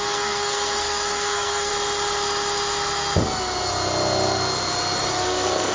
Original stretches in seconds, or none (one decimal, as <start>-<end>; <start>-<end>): 1.7-5.1